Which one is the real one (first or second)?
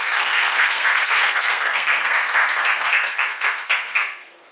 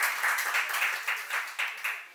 second